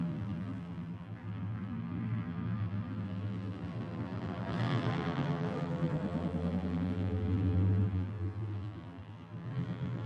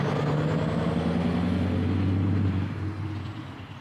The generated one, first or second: first